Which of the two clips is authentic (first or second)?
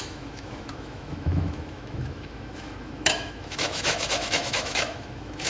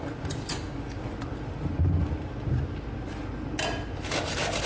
second